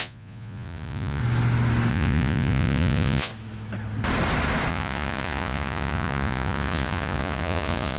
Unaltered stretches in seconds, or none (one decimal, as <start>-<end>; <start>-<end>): 1.2-1.9; 3.3-4.7